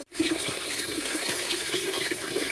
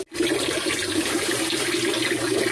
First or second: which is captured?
second